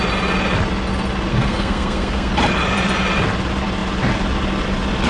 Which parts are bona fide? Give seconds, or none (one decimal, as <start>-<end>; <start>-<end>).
0.0-1.3; 2.3-5.1